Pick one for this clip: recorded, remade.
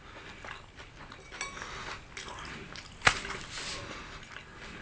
recorded